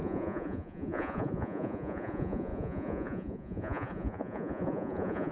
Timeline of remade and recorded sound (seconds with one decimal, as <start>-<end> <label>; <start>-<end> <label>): 0.0-5.3 remade